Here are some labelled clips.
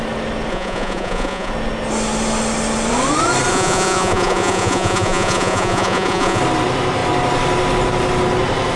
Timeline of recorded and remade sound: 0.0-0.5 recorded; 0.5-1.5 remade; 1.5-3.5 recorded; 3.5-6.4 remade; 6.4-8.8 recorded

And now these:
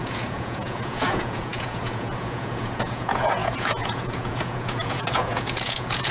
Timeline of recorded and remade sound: 0.0-6.1 remade

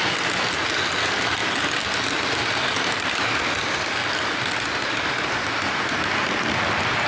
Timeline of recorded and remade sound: 0.0-7.1 recorded

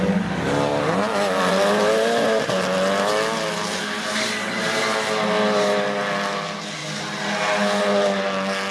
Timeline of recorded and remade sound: 0.0-8.7 recorded

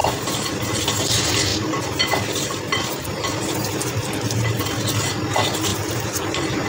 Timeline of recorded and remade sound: 0.0-0.6 remade; 0.6-5.7 recorded; 5.7-6.2 remade; 6.2-6.7 recorded

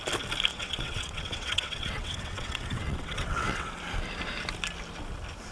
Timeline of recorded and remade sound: 0.0-0.5 recorded; 0.5-3.8 remade; 3.8-5.5 recorded

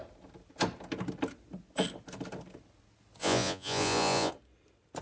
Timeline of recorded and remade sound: 0.0-3.2 recorded; 3.2-4.3 remade; 4.3-5.0 recorded

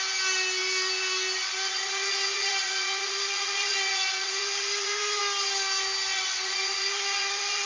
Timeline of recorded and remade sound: 0.0-0.6 recorded; 0.6-5.2 remade; 5.2-6.1 recorded; 6.1-7.7 remade